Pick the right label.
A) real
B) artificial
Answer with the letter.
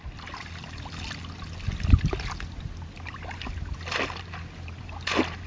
A